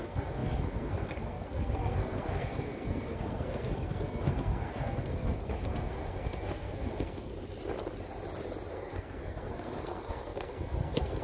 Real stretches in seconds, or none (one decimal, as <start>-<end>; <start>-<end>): 7.3-8.7